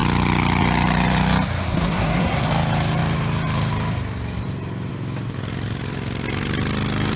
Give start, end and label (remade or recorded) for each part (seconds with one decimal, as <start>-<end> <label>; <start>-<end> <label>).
0.0-1.6 recorded; 1.6-2.5 remade; 2.5-7.2 recorded